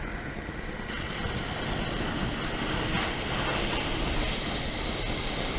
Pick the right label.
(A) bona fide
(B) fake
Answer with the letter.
A